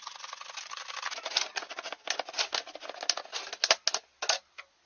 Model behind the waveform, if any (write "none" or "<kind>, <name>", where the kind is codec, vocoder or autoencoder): none